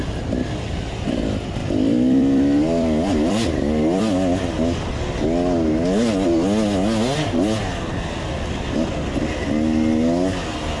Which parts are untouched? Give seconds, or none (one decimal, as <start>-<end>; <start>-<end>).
0.0-1.6; 4.0-10.8